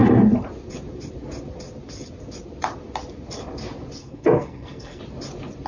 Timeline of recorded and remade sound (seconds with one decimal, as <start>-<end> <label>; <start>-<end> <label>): 0.0-4.0 recorded; 4.0-5.0 remade; 5.0-5.7 recorded